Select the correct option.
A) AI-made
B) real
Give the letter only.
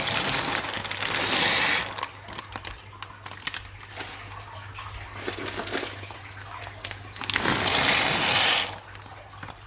B